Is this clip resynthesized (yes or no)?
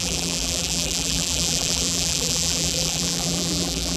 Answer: yes